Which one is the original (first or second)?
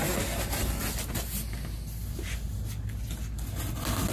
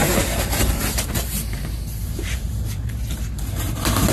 first